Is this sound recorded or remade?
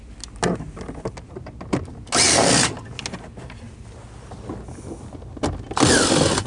recorded